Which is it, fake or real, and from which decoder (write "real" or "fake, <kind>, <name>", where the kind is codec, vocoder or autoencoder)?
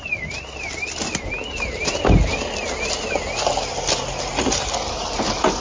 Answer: real